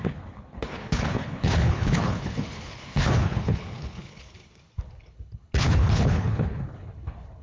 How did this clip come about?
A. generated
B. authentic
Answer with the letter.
A